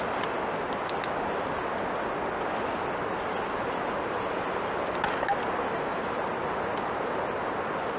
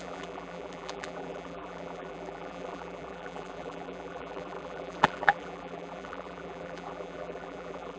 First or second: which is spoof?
second